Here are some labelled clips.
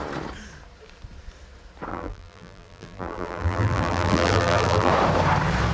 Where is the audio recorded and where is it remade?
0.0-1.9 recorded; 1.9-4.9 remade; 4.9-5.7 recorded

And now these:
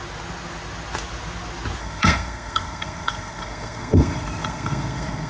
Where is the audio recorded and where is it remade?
0.0-1.8 recorded; 1.8-5.3 remade